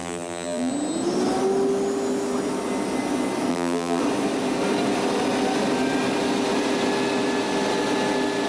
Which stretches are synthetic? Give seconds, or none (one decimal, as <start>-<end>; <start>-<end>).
0.0-0.7; 3.5-4.0